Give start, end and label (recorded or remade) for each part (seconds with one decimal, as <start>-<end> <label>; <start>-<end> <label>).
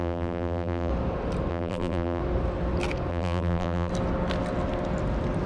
0.0-0.9 remade; 0.9-1.5 recorded; 1.5-2.2 remade; 2.2-3.1 recorded; 3.1-3.9 remade; 3.9-5.5 recorded